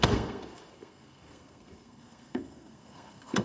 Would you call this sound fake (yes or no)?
yes